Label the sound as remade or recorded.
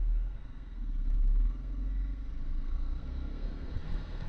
remade